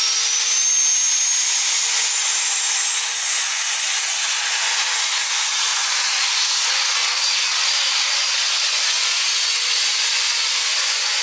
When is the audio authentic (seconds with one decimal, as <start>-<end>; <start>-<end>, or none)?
0.0-1.4; 7.0-8.6